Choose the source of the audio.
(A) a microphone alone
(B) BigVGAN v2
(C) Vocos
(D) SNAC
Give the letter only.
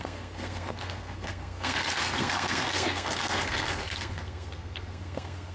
D